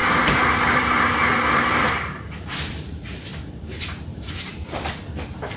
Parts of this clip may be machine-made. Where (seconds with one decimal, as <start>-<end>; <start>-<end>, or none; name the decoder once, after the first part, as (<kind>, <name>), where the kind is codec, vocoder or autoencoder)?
0.0-2.9 (vocoder, BigVGAN v2); 3.3-4.6